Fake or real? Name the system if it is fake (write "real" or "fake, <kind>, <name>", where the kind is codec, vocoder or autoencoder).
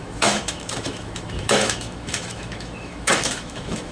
fake, autoencoder, DAC-VAE